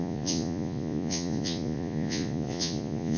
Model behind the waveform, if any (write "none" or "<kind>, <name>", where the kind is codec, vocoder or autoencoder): vocoder, Vocos